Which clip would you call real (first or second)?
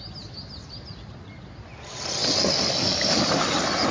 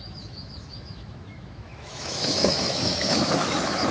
first